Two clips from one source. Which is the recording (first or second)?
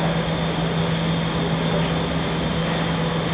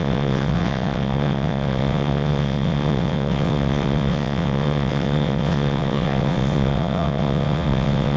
first